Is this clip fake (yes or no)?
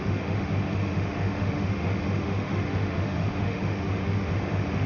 yes